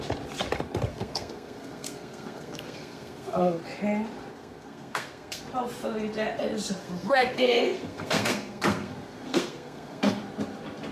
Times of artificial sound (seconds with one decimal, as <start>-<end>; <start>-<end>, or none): 0.9-3.6; 4.3-5.4; 6.8-10.2